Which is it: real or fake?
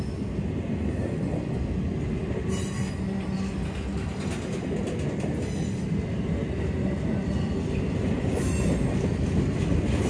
real